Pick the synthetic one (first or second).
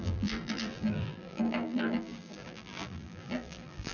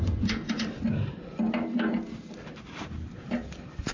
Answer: first